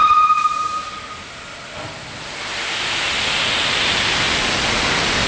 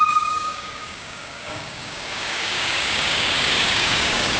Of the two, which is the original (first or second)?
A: first